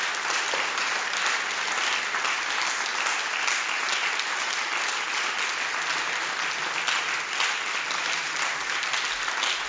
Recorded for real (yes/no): yes